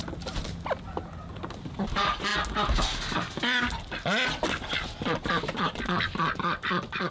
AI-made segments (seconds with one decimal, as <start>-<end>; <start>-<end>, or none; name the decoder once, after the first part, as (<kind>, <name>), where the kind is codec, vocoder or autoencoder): none